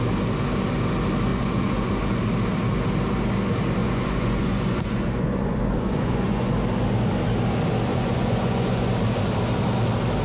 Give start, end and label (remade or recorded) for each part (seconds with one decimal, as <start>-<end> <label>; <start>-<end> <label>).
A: 0.0-1.3 recorded; 1.3-2.0 remade; 2.0-3.8 recorded; 3.8-6.5 remade; 6.5-7.9 recorded; 7.9-8.9 remade; 8.9-10.2 recorded